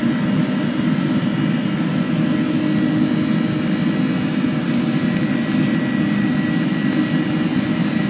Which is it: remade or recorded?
recorded